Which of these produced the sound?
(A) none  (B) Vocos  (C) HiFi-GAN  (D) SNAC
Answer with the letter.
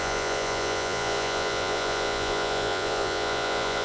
B